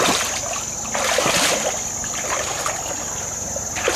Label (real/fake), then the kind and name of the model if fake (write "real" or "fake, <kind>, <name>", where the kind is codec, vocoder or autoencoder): real